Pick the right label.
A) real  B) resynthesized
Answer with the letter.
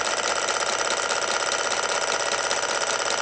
A